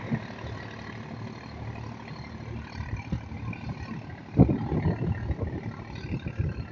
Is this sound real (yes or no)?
yes